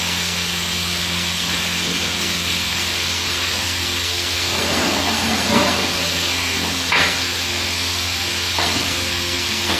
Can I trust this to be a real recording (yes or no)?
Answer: no